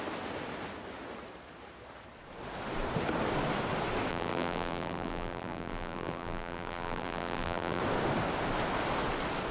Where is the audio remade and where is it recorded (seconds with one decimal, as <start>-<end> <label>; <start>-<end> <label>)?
0.0-4.1 recorded; 4.1-7.8 remade; 7.8-9.5 recorded

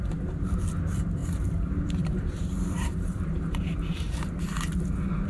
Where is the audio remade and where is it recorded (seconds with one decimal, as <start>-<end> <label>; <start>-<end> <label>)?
0.0-1.2 recorded; 1.2-4.4 remade; 4.4-5.3 recorded

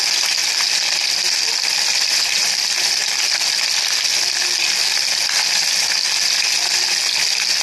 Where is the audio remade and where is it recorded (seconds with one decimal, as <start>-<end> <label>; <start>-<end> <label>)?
0.0-0.4 remade; 0.4-2.2 recorded; 2.2-4.1 remade; 4.1-7.6 recorded